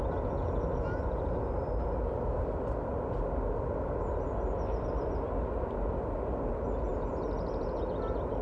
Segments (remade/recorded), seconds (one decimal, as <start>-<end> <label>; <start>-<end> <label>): 0.0-8.4 recorded